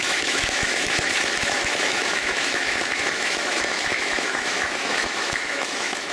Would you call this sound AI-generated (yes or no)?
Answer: yes